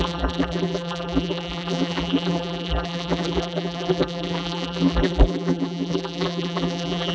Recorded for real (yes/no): no